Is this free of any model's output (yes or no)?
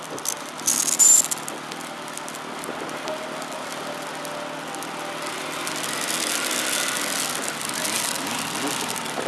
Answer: yes